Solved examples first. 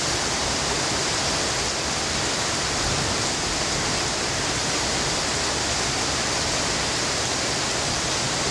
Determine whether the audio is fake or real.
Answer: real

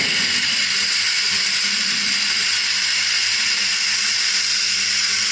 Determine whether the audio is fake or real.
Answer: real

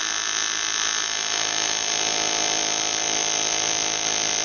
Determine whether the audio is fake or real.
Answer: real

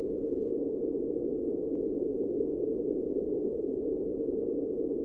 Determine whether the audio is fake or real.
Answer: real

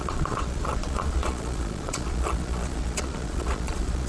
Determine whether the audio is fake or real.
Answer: fake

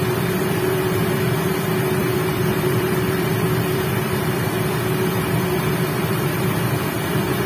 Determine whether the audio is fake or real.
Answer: fake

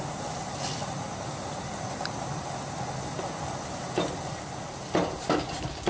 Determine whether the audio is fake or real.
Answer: real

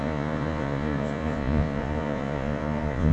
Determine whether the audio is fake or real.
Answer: fake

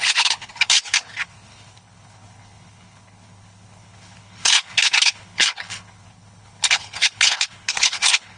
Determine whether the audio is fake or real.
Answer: fake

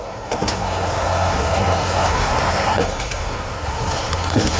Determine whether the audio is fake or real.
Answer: fake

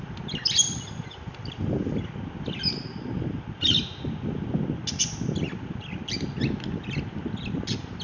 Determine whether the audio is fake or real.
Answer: real